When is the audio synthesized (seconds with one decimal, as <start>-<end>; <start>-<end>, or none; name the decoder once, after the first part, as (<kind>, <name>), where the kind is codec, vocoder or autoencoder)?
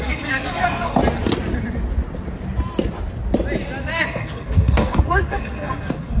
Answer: 0.0-1.0 (codec, SNAC); 3.8-6.2